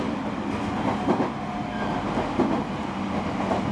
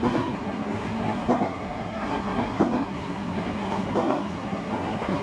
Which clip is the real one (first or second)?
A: first